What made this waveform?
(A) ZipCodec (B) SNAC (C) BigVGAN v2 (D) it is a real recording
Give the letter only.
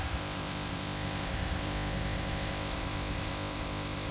A